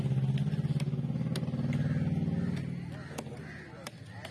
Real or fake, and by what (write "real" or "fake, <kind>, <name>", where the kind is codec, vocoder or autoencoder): real